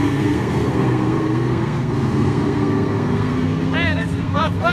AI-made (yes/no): yes